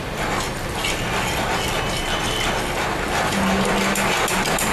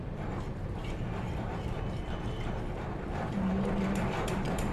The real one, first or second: first